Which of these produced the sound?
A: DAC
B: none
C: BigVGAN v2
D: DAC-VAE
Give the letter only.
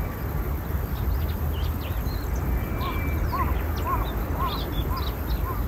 B